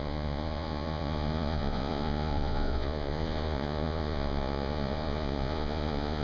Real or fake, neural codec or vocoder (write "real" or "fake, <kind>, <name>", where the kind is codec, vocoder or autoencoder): fake, vocoder, Vocos